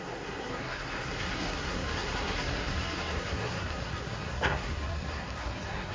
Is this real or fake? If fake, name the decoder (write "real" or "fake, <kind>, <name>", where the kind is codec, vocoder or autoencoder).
fake, codec, SNAC